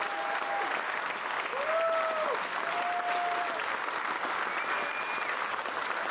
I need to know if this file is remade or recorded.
recorded